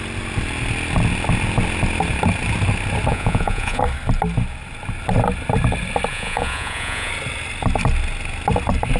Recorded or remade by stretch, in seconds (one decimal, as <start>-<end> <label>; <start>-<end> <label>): 0.0-3.1 recorded; 3.1-3.8 remade; 3.8-6.1 recorded; 6.1-7.1 remade; 7.1-9.0 recorded